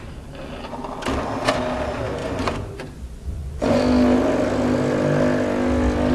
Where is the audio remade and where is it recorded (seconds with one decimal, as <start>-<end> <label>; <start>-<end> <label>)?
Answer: 0.0-2.2 recorded; 2.2-3.8 remade; 3.8-6.1 recorded